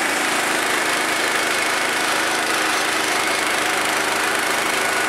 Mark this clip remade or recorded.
remade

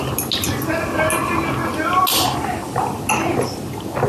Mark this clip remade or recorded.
recorded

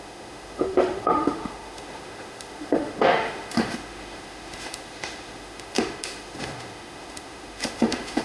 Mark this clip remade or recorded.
remade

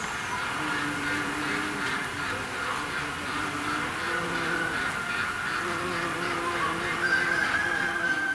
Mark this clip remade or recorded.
recorded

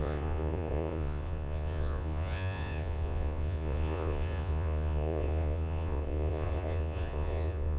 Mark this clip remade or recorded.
remade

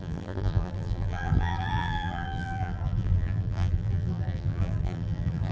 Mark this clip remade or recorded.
remade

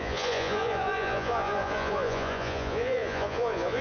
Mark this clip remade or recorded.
remade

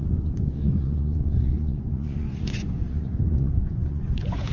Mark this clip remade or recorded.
remade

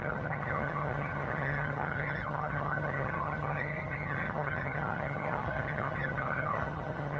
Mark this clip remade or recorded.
remade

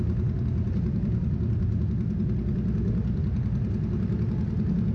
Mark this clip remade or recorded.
recorded